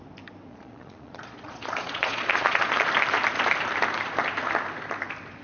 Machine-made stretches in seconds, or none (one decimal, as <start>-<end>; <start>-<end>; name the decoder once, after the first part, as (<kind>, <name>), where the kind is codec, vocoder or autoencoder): 0.5-2.9 (vocoder, Vocos)